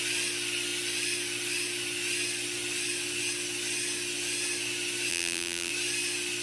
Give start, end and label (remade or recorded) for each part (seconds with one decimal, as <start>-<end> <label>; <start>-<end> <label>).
0.0-5.1 recorded; 5.1-5.7 remade; 5.7-6.4 recorded